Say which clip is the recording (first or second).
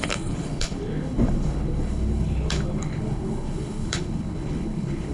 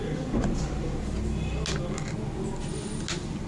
second